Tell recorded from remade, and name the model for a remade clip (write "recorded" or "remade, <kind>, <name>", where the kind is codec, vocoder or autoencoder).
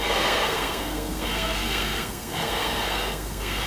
remade, codec, SNAC